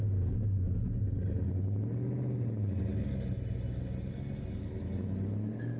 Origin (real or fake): real